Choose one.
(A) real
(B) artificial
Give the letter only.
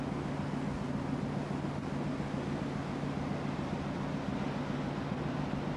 A